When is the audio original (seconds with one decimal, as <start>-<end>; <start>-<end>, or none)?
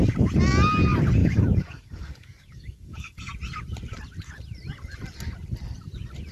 0.0-1.2; 3.2-6.3